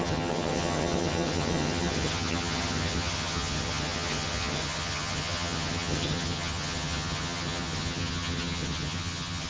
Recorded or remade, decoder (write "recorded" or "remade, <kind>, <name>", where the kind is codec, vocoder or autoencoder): remade, vocoder, HiFi-GAN